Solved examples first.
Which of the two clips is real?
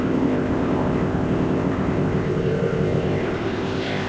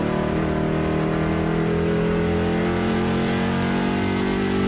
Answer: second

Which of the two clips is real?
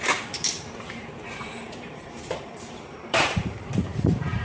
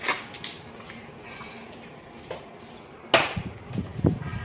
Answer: second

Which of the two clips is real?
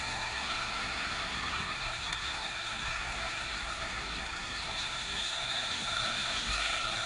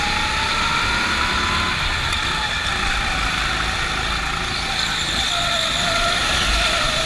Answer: second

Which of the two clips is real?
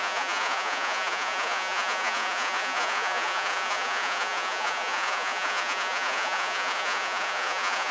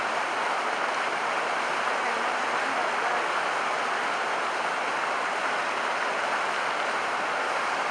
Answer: second